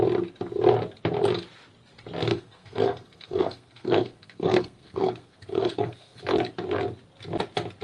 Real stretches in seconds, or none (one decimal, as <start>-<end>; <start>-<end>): 0.0-2.3; 6.2-7.8